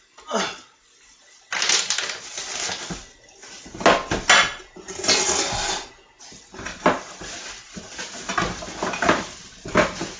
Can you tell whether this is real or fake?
real